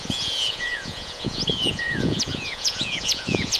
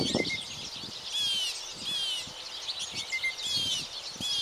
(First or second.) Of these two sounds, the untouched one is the second